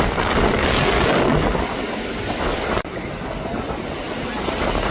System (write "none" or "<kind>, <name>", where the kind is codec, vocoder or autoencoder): none